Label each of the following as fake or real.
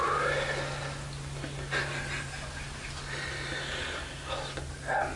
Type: real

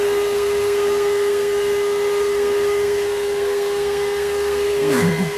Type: fake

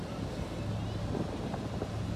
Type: real